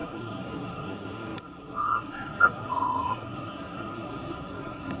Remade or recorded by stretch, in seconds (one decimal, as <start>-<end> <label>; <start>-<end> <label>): 0.0-5.0 remade